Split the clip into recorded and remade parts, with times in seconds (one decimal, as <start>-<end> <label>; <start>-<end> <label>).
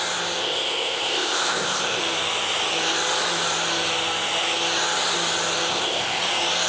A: 0.0-0.4 recorded; 0.4-2.0 remade; 2.0-5.7 recorded; 5.7-6.2 remade; 6.2-6.7 recorded